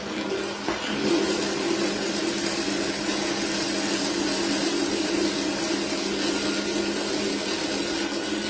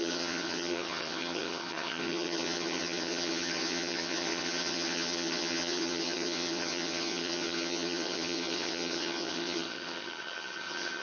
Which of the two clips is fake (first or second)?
second